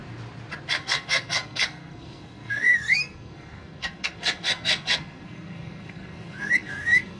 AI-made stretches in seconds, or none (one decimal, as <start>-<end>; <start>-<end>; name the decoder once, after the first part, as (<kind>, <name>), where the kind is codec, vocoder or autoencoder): 0.7-7.2 (codec, SNAC)

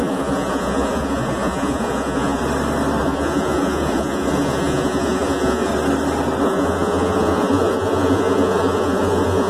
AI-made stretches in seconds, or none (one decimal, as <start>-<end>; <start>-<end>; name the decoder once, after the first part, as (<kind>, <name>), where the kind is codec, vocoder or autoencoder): 0.0-2.4 (vocoder, Vocos); 3.0-5.7; 6.4-9.5